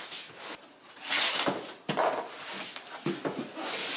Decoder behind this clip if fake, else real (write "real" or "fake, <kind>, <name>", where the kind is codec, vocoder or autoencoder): real